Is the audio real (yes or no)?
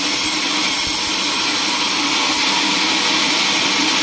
yes